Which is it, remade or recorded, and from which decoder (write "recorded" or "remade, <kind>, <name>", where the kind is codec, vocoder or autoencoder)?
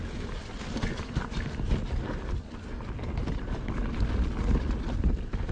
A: recorded